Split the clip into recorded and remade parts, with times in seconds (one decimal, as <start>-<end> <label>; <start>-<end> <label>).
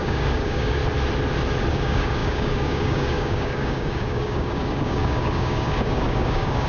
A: 0.0-0.8 remade; 0.8-1.7 recorded; 1.7-6.7 remade